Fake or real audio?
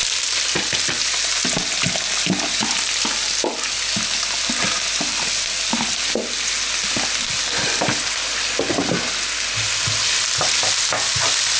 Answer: real